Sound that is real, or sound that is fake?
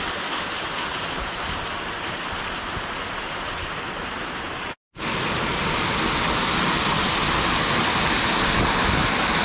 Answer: real